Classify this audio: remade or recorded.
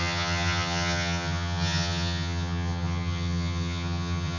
remade